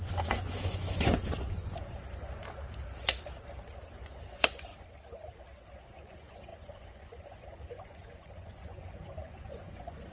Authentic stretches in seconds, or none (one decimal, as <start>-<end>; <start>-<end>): 2.4-3.9; 4.7-5.7